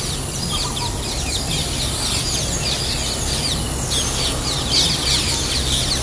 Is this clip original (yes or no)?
yes